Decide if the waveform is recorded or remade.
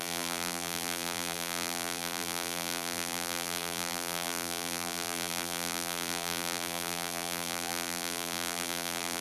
remade